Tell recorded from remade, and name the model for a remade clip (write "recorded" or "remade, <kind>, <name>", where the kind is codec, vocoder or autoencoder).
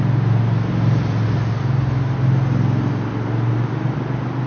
recorded